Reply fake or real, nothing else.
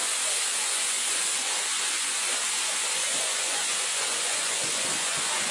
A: fake